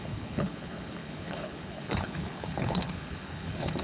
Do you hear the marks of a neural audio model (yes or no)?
yes